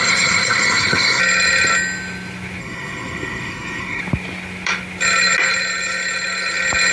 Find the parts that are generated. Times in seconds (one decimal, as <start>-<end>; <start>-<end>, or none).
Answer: 0.0-1.2; 2.6-4.0